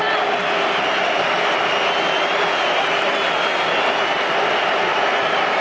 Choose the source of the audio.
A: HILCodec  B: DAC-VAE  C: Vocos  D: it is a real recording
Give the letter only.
D